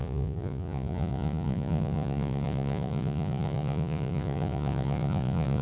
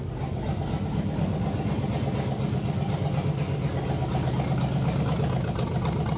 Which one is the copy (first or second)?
first